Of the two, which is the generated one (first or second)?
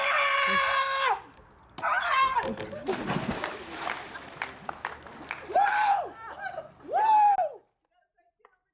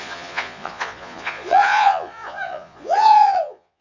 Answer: second